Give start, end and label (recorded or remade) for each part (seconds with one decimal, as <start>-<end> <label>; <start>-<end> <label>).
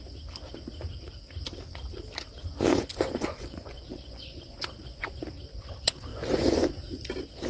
0.0-2.7 recorded; 2.7-5.2 remade; 5.2-6.1 recorded; 6.1-6.7 remade; 6.7-7.5 recorded